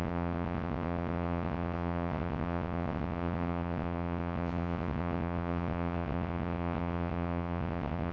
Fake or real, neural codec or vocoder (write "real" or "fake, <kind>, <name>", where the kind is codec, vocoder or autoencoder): fake, vocoder, WaveNeXt